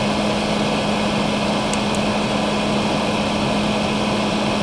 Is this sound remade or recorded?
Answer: recorded